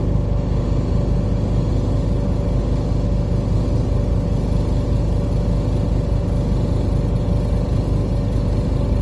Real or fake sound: real